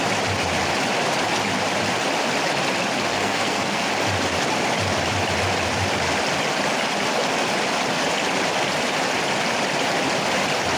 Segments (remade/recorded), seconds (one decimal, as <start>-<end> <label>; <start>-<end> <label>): 0.0-3.1 recorded; 3.1-3.9 remade; 3.9-10.8 recorded